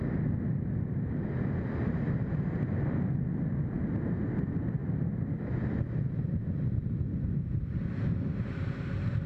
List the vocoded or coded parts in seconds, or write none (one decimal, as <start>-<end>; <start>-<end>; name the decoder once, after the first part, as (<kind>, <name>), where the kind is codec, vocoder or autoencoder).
none